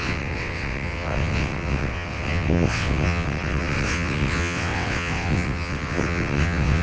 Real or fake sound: fake